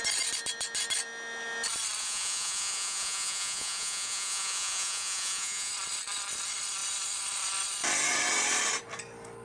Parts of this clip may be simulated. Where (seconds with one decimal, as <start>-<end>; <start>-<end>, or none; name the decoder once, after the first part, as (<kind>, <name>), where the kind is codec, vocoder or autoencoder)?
2.0-5.7 (vocoder, Vocos)